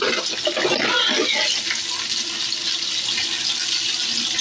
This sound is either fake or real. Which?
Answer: real